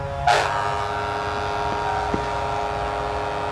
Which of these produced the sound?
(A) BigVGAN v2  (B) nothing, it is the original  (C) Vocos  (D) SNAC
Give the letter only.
B